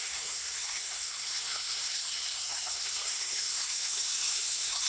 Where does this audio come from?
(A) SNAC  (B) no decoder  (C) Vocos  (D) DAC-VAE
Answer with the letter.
A